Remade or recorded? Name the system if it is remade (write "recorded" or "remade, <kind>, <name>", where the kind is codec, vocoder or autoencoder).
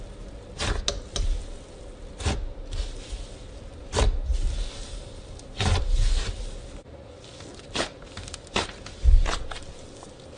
recorded